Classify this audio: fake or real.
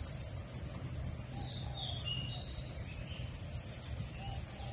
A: real